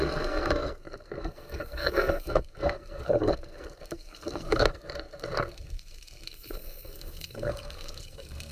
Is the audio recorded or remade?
remade